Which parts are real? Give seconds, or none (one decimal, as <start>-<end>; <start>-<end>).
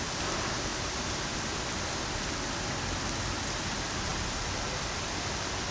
0.0-5.7